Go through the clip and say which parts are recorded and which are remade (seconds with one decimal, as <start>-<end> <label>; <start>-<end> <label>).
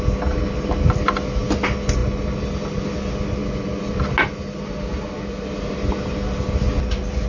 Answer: 0.0-7.3 recorded